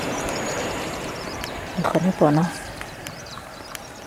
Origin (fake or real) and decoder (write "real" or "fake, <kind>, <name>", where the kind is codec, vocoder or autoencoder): fake, vocoder, BigVGAN v2